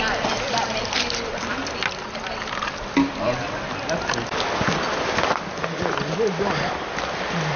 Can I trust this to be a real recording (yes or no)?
yes